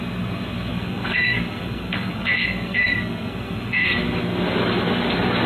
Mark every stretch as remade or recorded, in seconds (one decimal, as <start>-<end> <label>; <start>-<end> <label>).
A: 0.0-0.7 recorded; 0.7-4.0 remade; 4.0-5.5 recorded